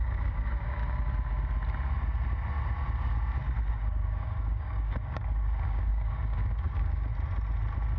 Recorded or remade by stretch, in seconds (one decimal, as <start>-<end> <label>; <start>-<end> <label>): 0.0-0.8 remade; 0.8-3.7 recorded; 3.7-7.1 remade; 7.1-8.0 recorded